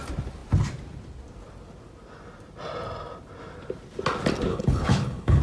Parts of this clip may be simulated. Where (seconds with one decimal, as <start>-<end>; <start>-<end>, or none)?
4.5-5.4